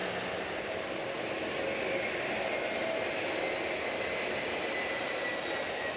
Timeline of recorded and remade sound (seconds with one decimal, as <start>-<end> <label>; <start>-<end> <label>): 0.0-6.0 recorded